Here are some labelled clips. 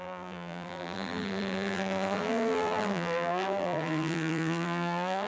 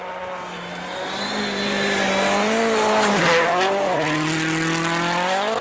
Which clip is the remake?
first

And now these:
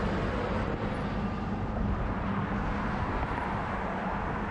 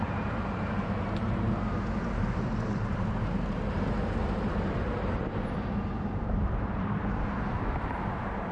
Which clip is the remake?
second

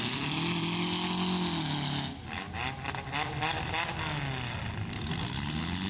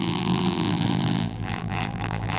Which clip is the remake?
second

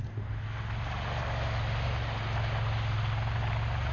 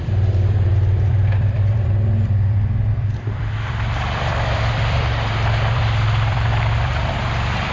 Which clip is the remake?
second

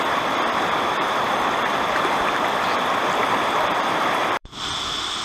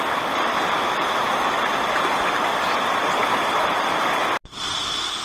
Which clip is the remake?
first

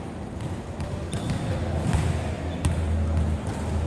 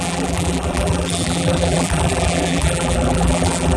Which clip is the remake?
second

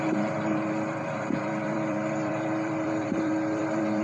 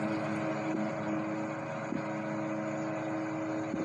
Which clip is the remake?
first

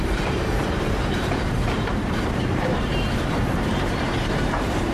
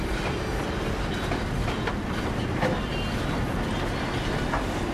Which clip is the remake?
first